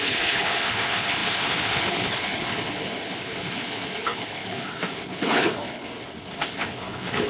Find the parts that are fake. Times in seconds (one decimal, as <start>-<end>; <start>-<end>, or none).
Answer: 0.0-7.3